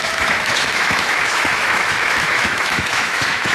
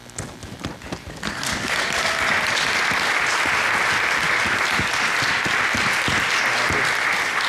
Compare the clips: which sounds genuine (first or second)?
second